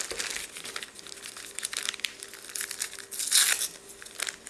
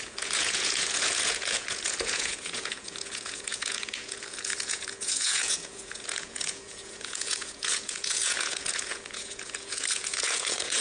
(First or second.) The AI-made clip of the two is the second